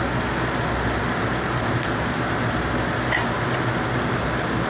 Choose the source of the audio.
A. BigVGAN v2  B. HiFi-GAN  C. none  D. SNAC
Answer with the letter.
C